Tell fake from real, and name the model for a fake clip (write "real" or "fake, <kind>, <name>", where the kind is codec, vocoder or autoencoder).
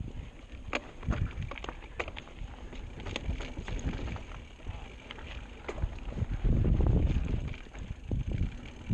real